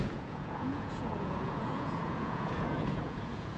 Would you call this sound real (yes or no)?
no